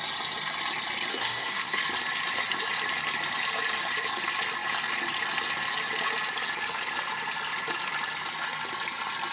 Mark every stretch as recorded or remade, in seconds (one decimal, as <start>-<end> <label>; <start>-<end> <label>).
0.0-1.1 recorded; 1.1-1.8 remade; 1.8-9.3 recorded